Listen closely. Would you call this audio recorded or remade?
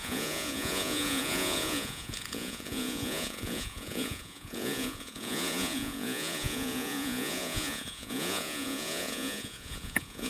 remade